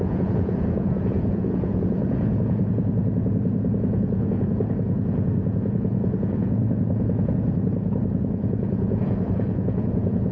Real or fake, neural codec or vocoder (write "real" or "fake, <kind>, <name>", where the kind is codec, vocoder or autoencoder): fake, vocoder, Vocos